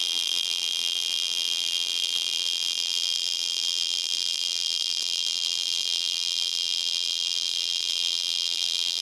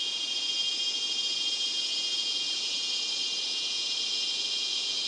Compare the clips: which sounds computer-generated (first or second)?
first